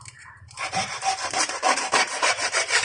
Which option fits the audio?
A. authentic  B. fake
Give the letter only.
B